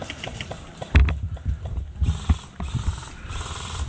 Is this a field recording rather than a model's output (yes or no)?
yes